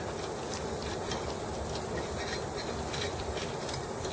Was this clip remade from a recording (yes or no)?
no